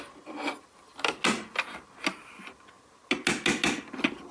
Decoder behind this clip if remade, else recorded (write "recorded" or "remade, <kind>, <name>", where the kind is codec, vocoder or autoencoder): recorded